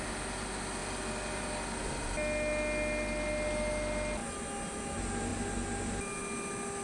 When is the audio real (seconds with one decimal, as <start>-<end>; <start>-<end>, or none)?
0.0-6.8